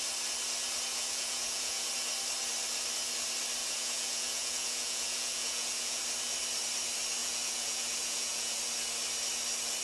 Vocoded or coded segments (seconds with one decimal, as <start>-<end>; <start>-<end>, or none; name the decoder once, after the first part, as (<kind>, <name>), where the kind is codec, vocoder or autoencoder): 0.9-1.9 (vocoder, Vocos); 3.6-6.0; 7.2-8.6